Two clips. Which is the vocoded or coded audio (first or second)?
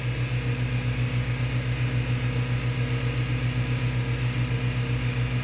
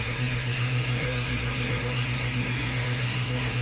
second